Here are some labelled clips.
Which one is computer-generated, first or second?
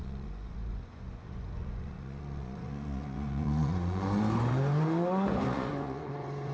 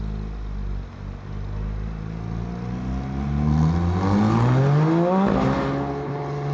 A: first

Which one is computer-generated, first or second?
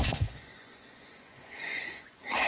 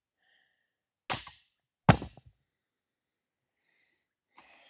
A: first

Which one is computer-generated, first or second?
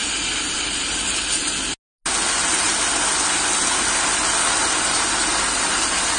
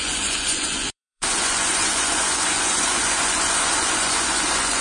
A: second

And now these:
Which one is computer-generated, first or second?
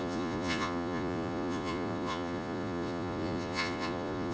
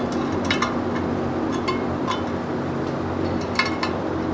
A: first